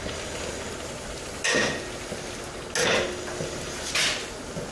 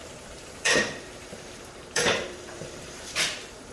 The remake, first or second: second